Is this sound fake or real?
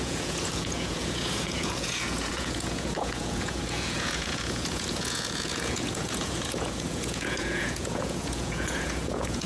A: fake